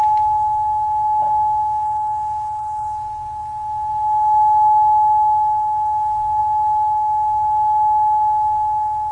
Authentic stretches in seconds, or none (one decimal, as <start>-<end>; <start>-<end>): 0.0-9.1